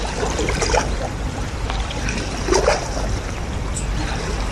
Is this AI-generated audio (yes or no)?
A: yes